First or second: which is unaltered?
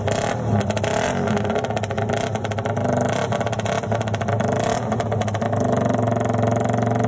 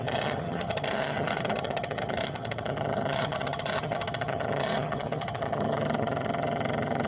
first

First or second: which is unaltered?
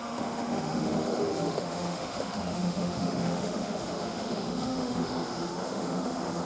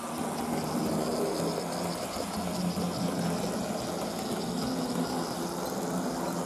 second